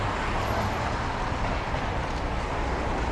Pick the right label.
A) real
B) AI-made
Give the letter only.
A